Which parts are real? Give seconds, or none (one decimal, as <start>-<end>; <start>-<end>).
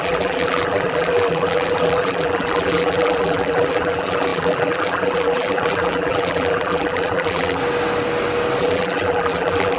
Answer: 7.6-8.6